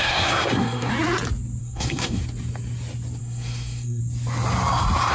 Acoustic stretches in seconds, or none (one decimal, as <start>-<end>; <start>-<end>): 0.9-1.6; 2.2-3.2; 4.0-5.1